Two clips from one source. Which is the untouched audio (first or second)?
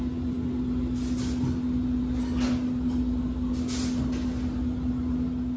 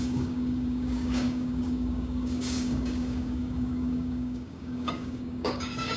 first